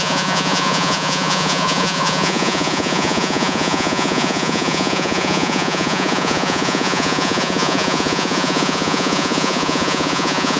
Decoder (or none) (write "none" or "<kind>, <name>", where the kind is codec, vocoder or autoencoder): vocoder, Vocos